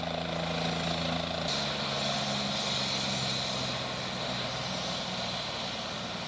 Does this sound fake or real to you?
real